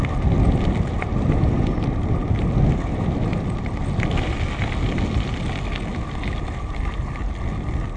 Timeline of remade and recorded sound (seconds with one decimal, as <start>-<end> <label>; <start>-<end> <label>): 0.0-8.0 recorded